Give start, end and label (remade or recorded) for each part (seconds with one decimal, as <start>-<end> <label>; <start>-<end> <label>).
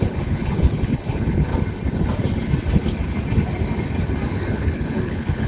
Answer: 0.0-1.5 remade; 1.5-4.5 recorded; 4.5-5.5 remade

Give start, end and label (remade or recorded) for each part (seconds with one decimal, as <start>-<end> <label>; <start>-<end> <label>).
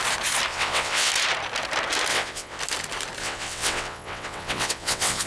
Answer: 0.0-0.5 recorded; 0.5-1.1 remade; 1.1-2.1 recorded; 2.1-2.6 remade; 2.6-3.2 recorded; 3.2-5.3 remade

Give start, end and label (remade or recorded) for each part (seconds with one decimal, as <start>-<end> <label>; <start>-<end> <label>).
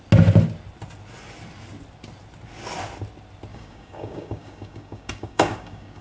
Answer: 0.0-3.5 recorded; 3.5-6.0 remade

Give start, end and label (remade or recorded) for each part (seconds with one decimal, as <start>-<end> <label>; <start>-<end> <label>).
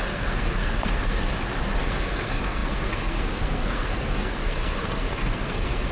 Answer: 0.0-1.3 remade; 1.3-1.8 recorded; 1.8-5.9 remade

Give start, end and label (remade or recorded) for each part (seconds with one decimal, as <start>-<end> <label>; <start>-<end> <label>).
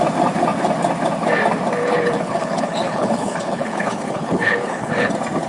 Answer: 0.0-1.8 recorded; 1.8-5.1 remade; 5.1-5.5 recorded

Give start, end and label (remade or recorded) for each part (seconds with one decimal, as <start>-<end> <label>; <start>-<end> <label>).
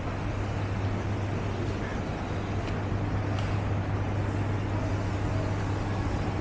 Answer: 0.0-6.4 recorded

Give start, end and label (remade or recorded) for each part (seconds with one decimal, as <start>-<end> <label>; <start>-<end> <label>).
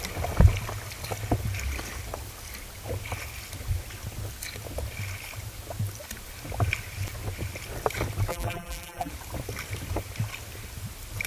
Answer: 0.0-8.3 recorded; 8.3-9.1 remade; 9.1-11.3 recorded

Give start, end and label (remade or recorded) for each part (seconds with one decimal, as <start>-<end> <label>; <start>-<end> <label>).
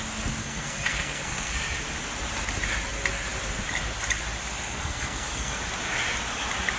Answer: 0.0-0.4 recorded; 0.4-1.5 remade; 1.5-4.5 recorded; 4.5-5.6 remade; 5.6-6.8 recorded